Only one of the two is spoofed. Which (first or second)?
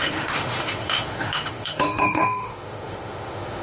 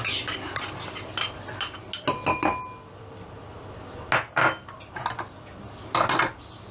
first